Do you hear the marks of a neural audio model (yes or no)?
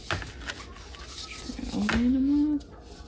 no